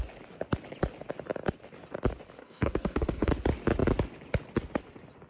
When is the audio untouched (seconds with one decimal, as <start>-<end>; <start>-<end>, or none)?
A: 0.0-2.4; 3.3-5.3